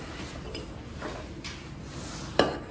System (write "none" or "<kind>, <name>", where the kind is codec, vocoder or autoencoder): none